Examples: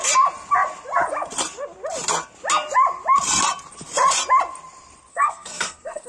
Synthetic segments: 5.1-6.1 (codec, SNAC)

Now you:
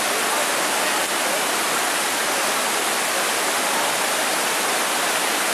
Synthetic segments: none

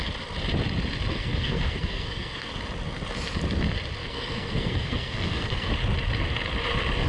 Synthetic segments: 1.1-2.5 (codec, SNAC); 4.0-5.7

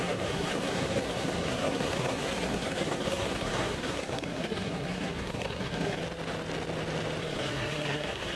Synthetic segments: 0.0-6.0 (codec, SNAC); 7.2-8.4